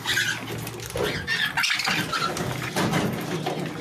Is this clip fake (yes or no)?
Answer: no